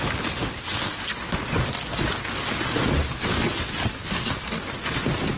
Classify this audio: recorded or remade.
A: recorded